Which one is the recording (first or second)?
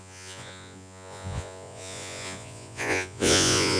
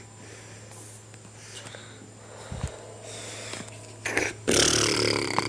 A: second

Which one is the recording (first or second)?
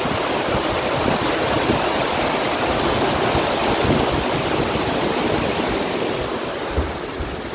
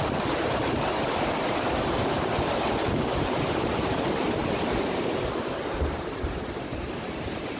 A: first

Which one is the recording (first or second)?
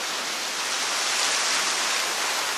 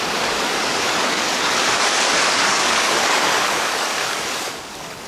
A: first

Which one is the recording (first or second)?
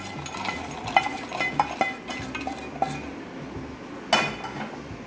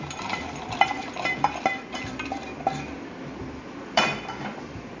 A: first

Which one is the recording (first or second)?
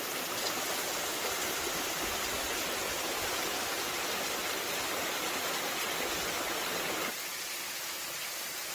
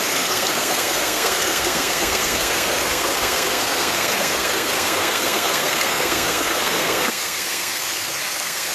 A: first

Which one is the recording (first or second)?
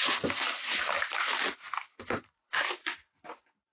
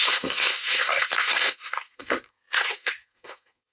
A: first